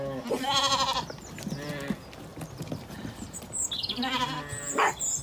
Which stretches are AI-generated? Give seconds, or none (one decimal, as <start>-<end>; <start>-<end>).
none